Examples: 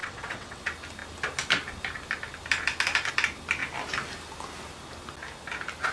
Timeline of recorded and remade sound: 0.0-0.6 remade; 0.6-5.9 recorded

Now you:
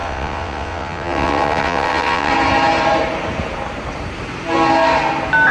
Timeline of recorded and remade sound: 0.0-2.3 remade; 2.3-5.5 recorded

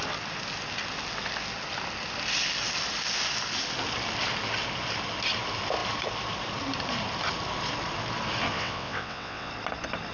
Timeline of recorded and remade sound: 0.0-8.5 recorded; 8.5-9.5 remade; 9.5-10.1 recorded

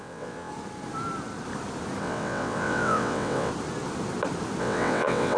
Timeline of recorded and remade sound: 0.0-0.5 remade; 0.5-2.0 recorded; 2.0-3.5 remade; 3.5-4.6 recorded; 4.6-5.4 remade

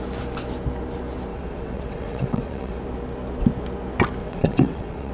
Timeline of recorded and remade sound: 0.0-1.3 recorded; 1.3-2.8 remade; 2.8-4.2 recorded; 4.2-5.1 remade

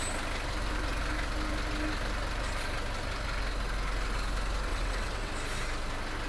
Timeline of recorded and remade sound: 0.0-4.7 recorded; 4.7-5.3 remade; 5.3-6.3 recorded